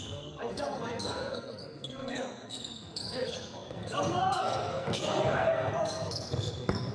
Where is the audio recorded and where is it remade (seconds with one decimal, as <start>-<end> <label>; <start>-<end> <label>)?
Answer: 0.0-6.9 remade